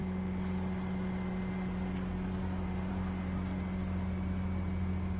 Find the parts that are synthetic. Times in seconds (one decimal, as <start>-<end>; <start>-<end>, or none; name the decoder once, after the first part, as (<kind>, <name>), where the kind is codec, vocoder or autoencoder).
none